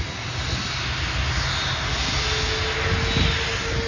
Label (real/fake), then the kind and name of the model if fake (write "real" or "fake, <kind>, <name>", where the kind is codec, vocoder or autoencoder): real